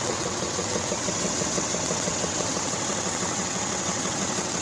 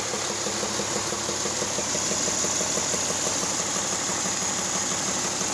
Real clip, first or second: second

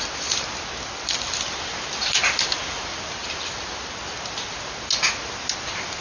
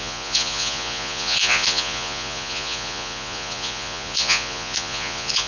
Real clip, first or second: first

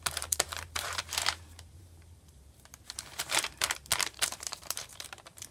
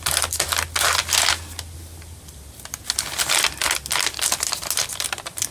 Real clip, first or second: second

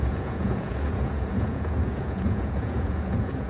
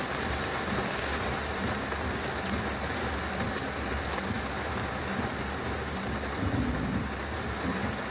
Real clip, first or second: second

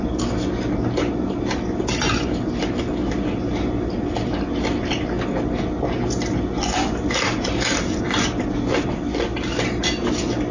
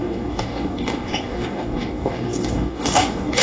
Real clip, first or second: first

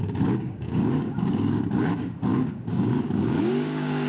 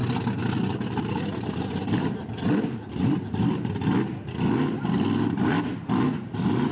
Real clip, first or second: second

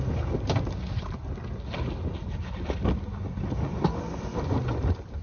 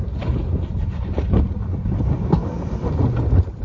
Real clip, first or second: first